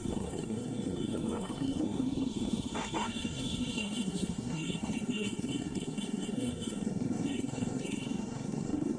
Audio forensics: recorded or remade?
remade